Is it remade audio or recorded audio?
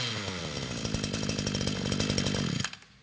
recorded